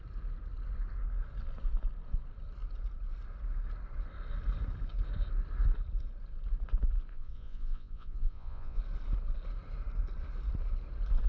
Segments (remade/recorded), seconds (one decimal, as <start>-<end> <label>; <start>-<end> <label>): 0.0-7.1 recorded; 7.1-8.8 remade; 8.8-11.3 recorded